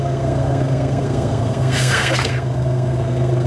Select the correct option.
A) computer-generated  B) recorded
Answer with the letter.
A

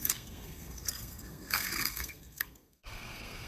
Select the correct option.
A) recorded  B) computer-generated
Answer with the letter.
B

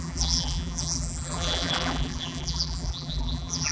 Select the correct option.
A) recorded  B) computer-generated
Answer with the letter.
B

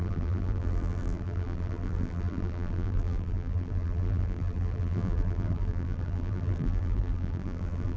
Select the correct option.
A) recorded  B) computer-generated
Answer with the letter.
B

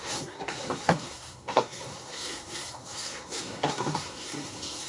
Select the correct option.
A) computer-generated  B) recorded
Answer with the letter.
A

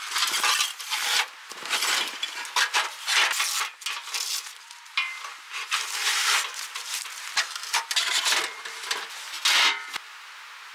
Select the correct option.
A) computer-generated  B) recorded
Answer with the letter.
B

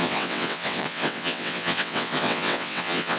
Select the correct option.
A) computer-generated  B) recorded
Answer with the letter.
A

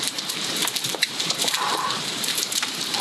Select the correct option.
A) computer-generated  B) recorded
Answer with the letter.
A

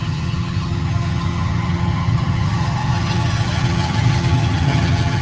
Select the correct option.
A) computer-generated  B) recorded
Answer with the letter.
A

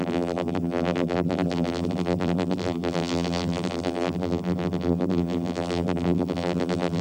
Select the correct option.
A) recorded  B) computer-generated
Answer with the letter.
B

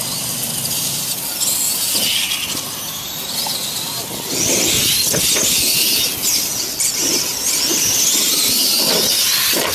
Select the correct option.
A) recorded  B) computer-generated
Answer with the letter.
A